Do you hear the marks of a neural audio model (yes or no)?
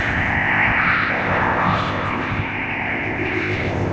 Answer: yes